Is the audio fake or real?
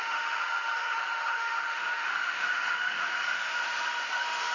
fake